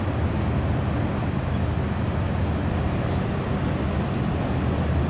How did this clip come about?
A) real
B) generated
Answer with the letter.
A